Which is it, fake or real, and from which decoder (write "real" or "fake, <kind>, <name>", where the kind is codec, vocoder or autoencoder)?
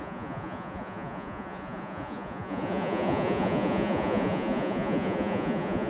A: fake, vocoder, Vocos